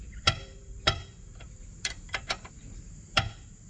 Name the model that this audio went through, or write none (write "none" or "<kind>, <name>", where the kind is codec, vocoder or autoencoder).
vocoder, BigVGAN v2